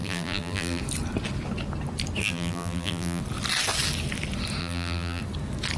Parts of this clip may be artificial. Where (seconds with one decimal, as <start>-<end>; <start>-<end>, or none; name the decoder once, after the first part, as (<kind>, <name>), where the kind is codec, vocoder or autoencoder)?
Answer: 0.0-0.8 (vocoder, BigVGAN v2); 2.2-3.2; 4.6-5.2